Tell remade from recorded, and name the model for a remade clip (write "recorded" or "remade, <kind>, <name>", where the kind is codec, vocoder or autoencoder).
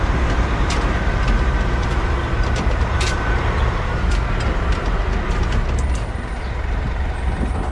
remade, vocoder, BigVGAN v2